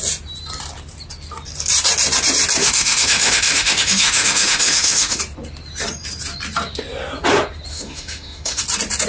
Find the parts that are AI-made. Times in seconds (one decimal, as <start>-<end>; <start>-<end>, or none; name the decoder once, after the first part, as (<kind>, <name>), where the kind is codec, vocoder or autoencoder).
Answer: 2.6-5.2 (autoencoder, DAC-VAE); 7.7-8.6